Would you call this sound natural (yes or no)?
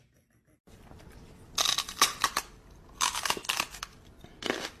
yes